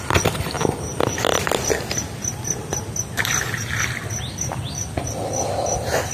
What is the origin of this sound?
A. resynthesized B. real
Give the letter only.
B